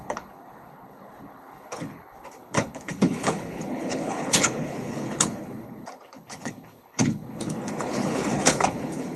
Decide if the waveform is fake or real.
fake